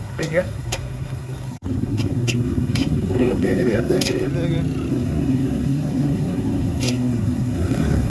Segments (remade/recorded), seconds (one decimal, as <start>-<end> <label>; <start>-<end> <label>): 0.0-4.3 remade; 4.3-4.9 recorded; 4.9-8.1 remade